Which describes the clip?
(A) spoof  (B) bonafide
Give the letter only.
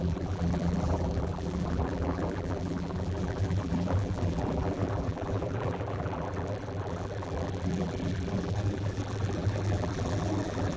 A